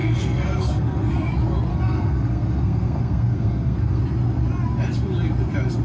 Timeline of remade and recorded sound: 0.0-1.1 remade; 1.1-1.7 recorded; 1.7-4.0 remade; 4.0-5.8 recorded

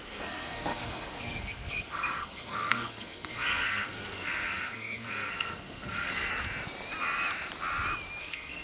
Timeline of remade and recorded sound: 0.0-6.3 remade; 6.3-8.2 recorded; 8.2-8.6 remade